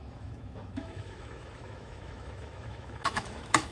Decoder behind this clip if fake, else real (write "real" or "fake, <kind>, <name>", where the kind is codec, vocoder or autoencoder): fake, autoencoder, DAC-VAE